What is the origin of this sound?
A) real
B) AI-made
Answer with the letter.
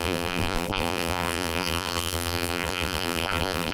B